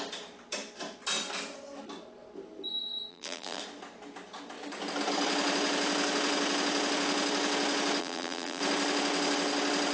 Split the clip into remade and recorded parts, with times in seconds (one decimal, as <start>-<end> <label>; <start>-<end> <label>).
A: 0.0-3.1 recorded; 3.1-3.6 remade; 3.6-8.0 recorded; 8.0-8.6 remade; 8.6-9.9 recorded